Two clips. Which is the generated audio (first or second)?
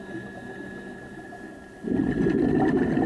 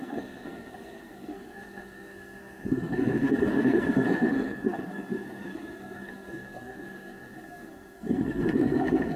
second